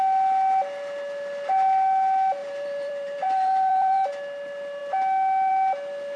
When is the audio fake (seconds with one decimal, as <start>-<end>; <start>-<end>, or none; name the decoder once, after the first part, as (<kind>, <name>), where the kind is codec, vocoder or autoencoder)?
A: 2.4-4.1 (vocoder, BigVGAN v2)